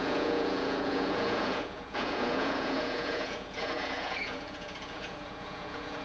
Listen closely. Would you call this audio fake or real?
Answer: fake